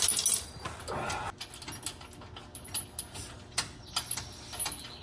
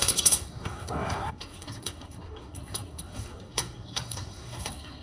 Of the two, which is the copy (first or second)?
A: second